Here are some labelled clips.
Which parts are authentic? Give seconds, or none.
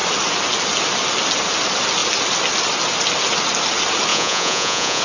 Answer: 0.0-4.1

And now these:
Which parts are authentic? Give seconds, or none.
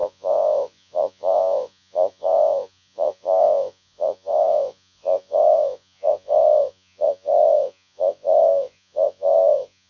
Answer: none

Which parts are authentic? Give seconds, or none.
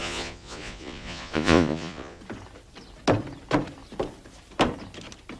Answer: 2.2-5.4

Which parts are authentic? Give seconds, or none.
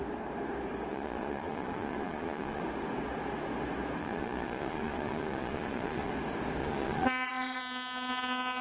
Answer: 0.0-0.9; 2.6-4.0; 6.1-6.6; 7.6-8.6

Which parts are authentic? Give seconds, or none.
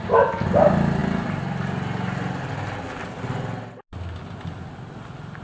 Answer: 0.0-5.4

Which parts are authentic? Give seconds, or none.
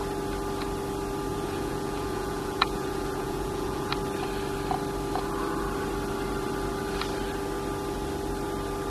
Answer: 0.0-1.3; 3.9-8.9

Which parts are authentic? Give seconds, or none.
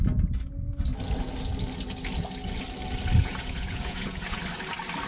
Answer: 0.0-3.2; 4.4-5.1